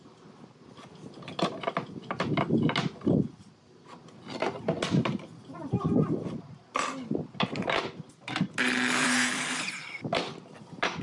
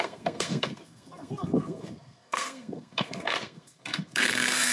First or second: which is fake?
second